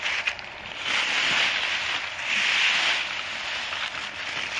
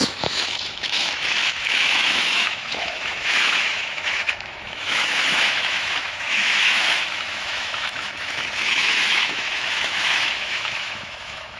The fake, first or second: second